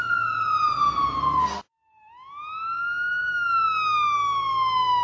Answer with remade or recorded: recorded